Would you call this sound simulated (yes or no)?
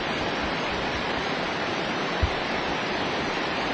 yes